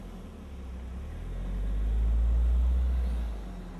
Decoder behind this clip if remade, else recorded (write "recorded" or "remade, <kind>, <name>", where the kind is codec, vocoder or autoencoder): recorded